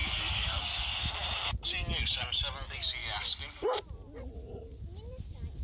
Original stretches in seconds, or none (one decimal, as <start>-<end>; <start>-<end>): 0.9-5.6